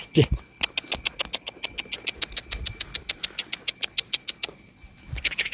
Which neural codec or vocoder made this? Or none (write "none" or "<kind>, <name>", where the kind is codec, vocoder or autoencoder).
none